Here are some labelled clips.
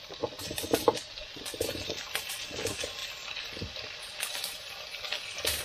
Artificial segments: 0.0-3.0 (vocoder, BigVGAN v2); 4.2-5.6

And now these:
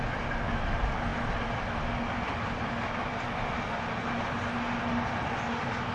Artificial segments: none

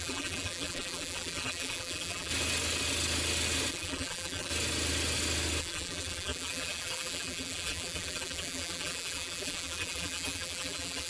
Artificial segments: 0.0-2.3 (vocoder, BigVGAN v2); 3.7-4.5; 5.6-11.1

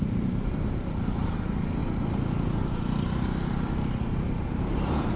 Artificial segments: 0.0-5.2 (vocoder, BigVGAN v2)

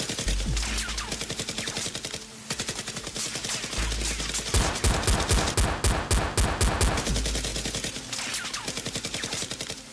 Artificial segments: none

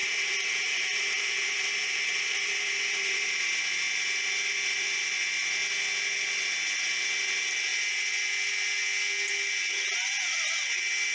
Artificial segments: 0.0-3.6 (vocoder, BigVGAN v2)

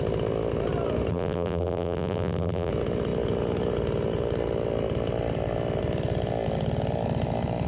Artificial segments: 1.1-2.7 (vocoder, BigVGAN v2)

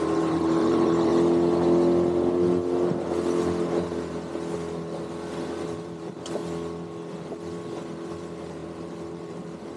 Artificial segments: 0.0-1.1 (vocoder, BigVGAN v2); 5.6-6.4; 8.1-9.8